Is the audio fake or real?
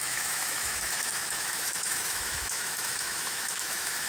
fake